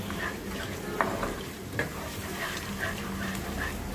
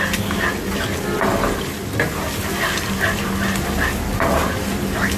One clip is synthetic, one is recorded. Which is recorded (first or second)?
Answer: second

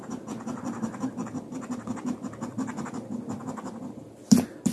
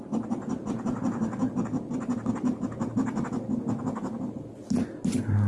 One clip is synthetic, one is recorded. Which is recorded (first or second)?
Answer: second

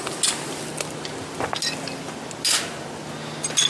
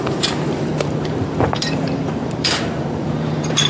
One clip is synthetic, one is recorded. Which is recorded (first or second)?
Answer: first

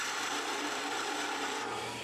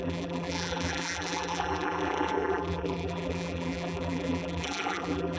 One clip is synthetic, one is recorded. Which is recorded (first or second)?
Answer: first